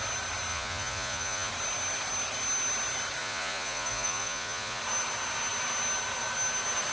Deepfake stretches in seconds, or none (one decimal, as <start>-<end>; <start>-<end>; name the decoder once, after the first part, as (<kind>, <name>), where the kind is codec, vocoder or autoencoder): 0.5-1.5 (vocoder, Vocos); 3.2-4.8